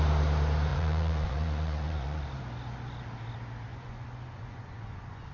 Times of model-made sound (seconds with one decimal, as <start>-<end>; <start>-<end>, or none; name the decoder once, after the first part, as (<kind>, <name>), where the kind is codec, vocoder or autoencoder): 0.7-2.2 (vocoder, Vocos); 3.7-5.3